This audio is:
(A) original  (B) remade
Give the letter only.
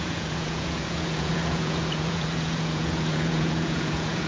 B